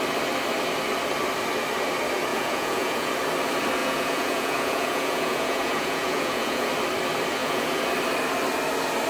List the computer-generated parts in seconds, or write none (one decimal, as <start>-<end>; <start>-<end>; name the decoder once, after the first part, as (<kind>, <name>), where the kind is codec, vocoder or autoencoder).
2.3-3.1 (vocoder, Vocos); 3.8-6.7; 7.4-7.9